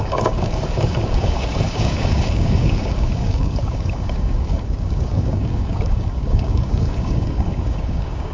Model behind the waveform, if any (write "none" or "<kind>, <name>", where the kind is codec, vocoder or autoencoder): codec, DAC